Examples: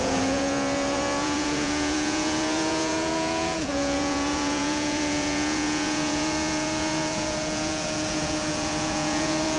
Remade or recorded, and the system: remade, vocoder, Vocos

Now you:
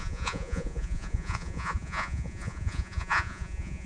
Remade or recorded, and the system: remade, vocoder, Vocos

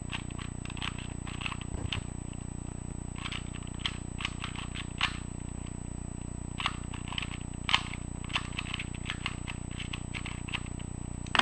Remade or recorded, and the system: recorded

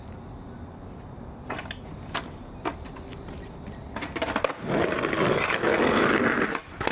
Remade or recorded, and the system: recorded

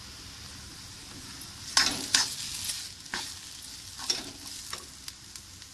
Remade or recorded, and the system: recorded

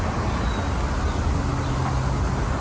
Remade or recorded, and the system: recorded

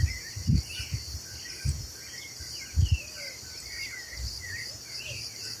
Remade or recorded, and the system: remade, vocoder, BigVGAN v2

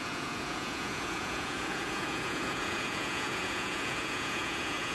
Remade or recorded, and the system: remade, vocoder, Vocos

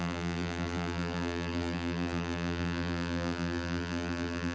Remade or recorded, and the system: remade, vocoder, BigVGAN v2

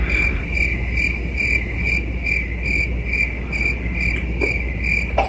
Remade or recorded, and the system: recorded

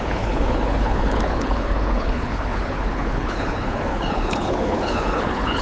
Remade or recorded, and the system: remade, codec, HILCodec